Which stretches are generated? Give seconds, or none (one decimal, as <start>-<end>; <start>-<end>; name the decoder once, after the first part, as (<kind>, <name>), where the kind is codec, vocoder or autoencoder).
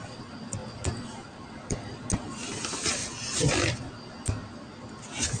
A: none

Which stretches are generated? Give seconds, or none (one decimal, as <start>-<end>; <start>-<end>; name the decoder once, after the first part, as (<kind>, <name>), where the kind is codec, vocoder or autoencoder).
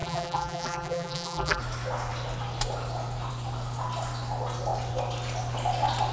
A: 0.0-1.6 (vocoder, BigVGAN v2)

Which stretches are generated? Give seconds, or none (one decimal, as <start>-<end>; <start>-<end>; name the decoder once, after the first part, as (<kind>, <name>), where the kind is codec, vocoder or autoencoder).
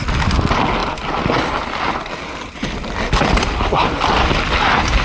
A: none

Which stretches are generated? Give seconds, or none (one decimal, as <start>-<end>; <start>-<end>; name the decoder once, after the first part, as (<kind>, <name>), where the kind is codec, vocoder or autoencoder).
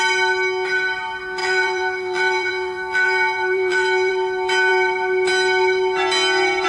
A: 1.4-4.1 (vocoder, BigVGAN v2)